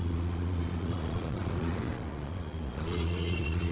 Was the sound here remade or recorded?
remade